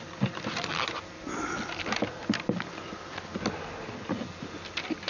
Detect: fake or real real